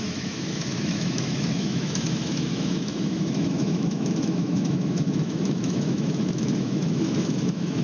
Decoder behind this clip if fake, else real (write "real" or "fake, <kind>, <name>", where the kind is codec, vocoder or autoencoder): fake, autoencoder, DAC-VAE